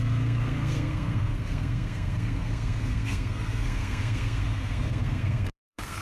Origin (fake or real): fake